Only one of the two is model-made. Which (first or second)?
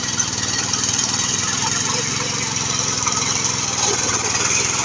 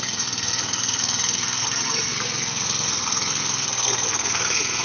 second